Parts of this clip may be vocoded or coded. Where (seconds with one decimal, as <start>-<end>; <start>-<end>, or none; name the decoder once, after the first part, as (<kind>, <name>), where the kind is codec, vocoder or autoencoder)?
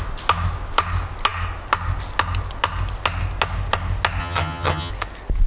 4.2-4.9 (vocoder, HiFi-GAN)